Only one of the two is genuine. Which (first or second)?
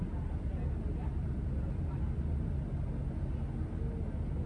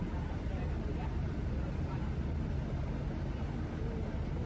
first